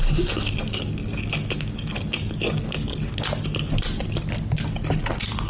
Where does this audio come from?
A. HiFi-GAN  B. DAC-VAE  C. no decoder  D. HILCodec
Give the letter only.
C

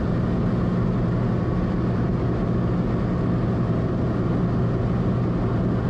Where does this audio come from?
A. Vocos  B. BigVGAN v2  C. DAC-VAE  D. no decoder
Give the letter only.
D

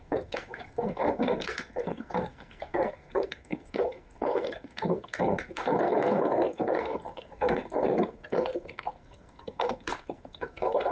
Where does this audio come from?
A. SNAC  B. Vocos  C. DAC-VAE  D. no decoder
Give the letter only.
A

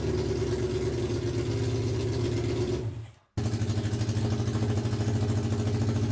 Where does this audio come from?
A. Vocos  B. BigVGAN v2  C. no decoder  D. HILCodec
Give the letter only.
C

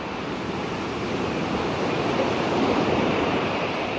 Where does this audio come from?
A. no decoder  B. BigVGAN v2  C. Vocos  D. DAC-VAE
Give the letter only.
B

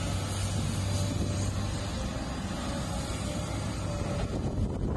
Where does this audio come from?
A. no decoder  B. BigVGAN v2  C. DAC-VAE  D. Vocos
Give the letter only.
A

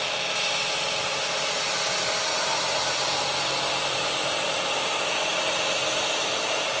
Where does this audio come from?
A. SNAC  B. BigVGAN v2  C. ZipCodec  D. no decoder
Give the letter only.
D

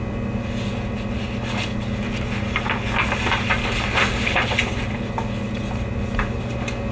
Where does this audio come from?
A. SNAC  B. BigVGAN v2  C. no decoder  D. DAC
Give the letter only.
C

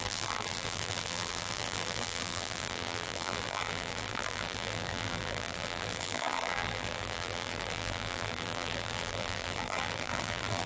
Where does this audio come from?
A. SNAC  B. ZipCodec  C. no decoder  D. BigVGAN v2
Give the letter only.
D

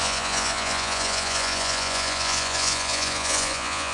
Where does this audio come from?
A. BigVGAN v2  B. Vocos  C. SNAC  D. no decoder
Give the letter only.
B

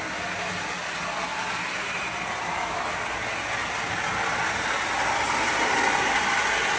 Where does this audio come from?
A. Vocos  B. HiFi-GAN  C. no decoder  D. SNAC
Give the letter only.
C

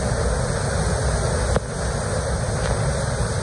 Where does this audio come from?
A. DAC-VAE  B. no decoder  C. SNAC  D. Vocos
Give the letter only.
B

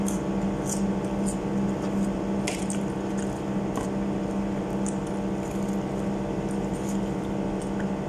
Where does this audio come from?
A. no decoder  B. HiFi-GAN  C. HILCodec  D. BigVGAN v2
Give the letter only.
A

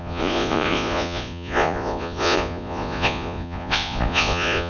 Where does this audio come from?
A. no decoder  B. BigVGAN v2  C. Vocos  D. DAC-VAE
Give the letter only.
C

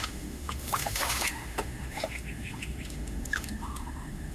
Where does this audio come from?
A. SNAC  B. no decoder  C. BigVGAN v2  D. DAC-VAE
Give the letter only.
D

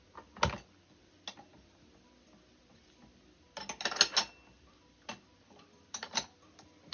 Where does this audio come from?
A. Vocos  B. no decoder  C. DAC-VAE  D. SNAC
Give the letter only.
B